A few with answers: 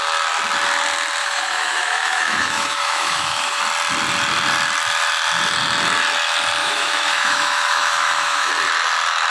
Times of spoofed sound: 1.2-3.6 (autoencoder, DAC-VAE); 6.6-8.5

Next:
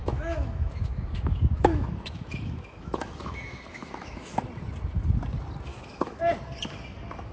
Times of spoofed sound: 0.0-4.4 (autoencoder, DAC-VAE); 5.7-6.2

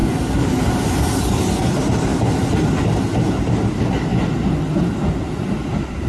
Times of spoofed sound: none